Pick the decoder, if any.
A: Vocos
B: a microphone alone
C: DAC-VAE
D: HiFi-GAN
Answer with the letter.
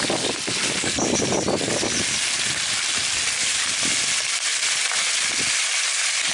B